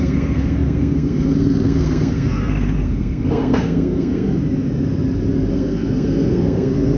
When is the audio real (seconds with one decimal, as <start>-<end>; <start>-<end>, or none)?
4.4-5.5